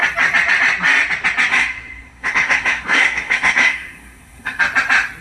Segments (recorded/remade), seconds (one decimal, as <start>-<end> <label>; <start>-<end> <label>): 0.0-1.5 recorded; 1.5-4.6 remade; 4.6-5.2 recorded